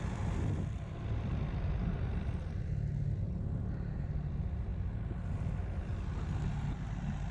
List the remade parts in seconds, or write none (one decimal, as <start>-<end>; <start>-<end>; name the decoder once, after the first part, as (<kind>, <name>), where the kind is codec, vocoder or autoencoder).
2.1-2.7 (vocoder, BigVGAN v2)